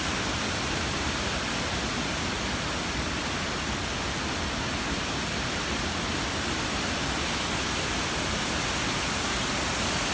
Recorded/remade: recorded